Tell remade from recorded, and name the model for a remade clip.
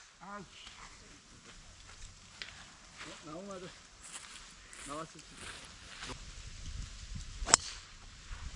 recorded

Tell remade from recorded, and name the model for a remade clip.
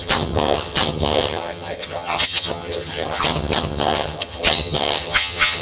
remade, vocoder, HiFi-GAN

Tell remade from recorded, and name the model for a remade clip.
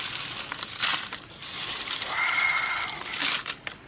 recorded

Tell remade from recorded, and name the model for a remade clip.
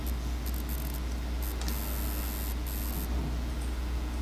recorded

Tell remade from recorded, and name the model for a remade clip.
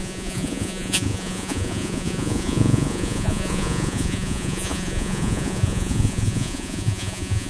remade, vocoder, Vocos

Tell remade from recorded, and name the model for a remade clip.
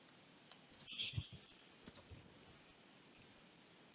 recorded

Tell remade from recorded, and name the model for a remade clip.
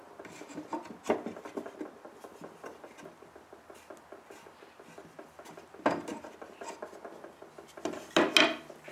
recorded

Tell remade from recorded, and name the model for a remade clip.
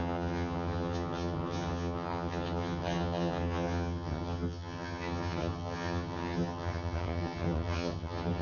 remade, vocoder, HiFi-GAN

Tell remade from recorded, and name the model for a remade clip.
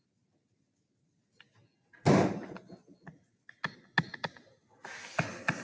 recorded